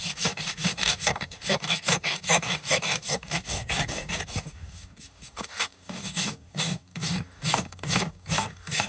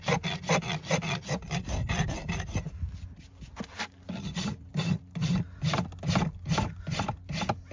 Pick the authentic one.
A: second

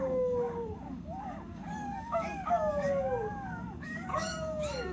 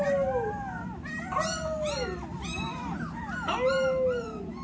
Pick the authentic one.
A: second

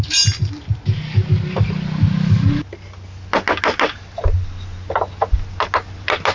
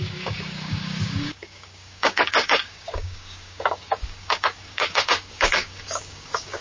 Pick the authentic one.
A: first